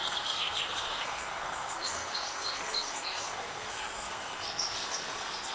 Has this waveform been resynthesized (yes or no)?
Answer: yes